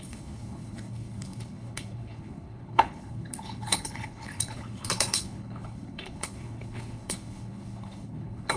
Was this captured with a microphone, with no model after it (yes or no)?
no